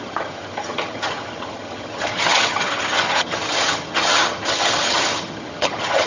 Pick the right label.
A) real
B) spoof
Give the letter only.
B